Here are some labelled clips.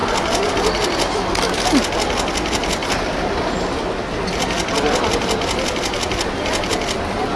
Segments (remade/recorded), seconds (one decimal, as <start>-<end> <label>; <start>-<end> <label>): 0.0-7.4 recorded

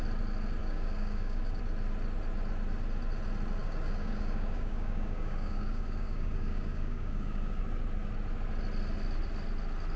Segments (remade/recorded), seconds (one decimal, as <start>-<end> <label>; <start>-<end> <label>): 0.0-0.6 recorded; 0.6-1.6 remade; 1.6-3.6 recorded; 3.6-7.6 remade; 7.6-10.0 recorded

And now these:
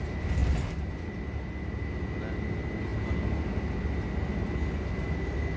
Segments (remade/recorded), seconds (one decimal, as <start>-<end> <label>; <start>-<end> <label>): 0.0-5.6 recorded

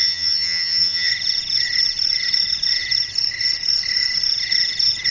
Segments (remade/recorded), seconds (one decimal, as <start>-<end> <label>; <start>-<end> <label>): 0.0-1.1 remade; 1.1-5.1 recorded

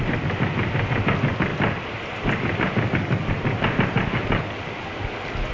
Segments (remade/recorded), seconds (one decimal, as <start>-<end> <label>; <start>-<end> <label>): 0.0-1.5 recorded; 1.5-4.8 remade; 4.8-5.5 recorded

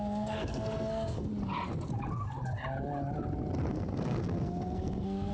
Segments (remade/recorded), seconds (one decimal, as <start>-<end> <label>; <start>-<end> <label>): 0.0-1.3 remade; 1.3-3.7 recorded; 3.7-5.3 remade

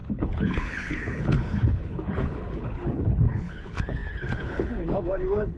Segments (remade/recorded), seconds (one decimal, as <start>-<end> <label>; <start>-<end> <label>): 0.0-5.6 remade